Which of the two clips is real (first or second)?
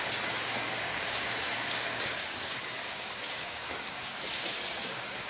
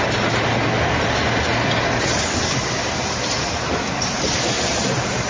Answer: second